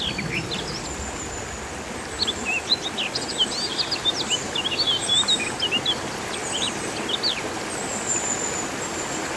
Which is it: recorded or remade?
recorded